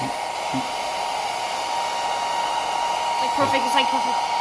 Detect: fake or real real